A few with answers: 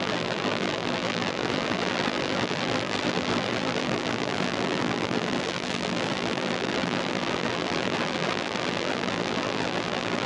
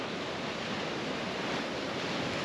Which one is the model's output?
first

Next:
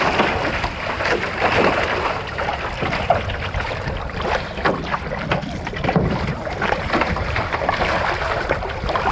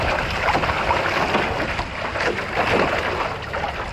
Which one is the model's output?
first